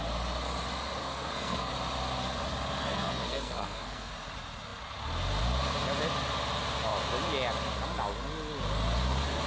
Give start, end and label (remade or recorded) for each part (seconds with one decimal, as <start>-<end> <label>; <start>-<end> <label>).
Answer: 0.0-1.0 recorded; 1.0-1.7 remade; 1.7-2.8 recorded; 2.8-4.1 remade; 4.1-9.5 recorded